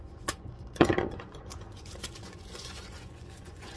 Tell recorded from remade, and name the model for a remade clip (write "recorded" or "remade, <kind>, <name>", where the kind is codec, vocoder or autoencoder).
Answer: remade, vocoder, Vocos